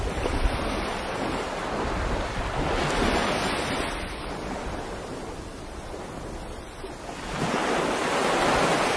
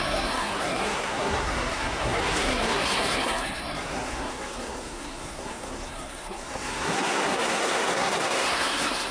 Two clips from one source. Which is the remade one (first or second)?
second